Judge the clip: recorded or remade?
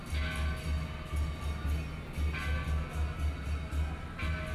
recorded